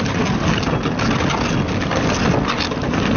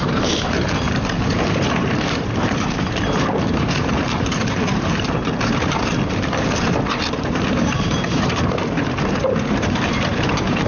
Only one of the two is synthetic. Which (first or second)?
second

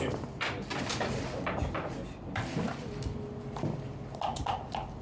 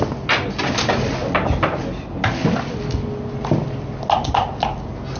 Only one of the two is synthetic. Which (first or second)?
first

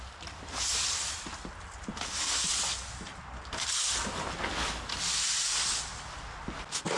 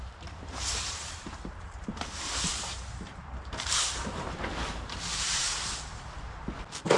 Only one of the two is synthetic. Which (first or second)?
second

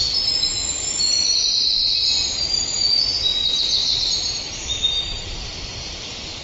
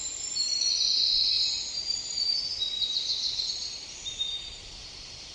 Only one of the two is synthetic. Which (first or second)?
second